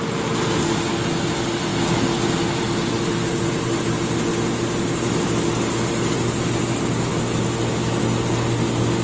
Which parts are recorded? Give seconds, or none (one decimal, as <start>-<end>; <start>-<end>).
0.0-9.0